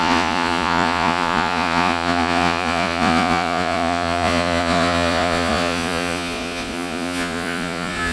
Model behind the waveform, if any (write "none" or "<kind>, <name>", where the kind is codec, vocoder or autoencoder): vocoder, Vocos